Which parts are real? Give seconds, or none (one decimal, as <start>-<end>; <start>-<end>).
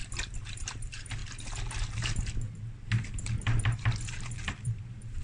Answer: 0.0-0.5; 1.2-4.3